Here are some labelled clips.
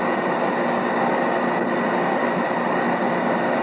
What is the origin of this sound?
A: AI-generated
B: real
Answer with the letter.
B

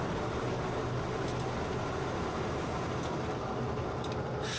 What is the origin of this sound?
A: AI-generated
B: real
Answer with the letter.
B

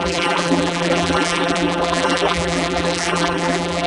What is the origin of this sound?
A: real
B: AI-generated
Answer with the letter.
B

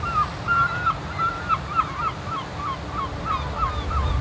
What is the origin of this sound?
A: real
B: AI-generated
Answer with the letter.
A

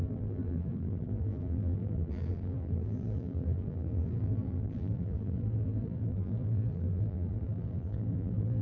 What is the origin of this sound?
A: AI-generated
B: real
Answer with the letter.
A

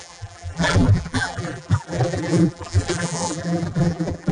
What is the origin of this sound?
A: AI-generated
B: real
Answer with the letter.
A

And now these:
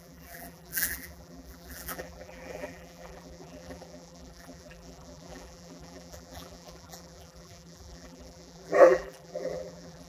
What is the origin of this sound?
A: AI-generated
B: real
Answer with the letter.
A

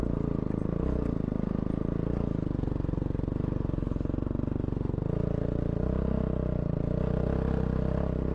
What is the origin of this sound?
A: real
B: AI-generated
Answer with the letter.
A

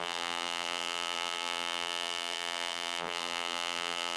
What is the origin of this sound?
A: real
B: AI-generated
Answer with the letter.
B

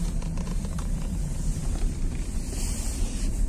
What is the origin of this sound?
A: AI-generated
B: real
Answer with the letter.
A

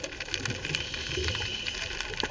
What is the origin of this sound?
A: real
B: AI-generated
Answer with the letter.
A